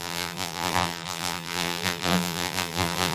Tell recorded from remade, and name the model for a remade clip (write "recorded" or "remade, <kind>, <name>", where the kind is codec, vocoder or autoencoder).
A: remade, vocoder, BigVGAN v2